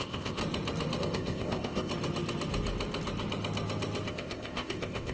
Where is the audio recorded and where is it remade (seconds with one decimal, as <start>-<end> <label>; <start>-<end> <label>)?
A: 0.0-0.4 remade; 0.4-1.0 recorded; 1.0-1.9 remade; 1.9-4.1 recorded; 4.1-5.1 remade